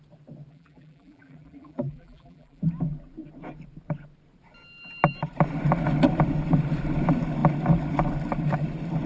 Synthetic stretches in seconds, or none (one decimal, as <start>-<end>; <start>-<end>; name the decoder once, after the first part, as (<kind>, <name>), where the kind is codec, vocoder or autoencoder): 0.5-2.6 (vocoder, BigVGAN v2)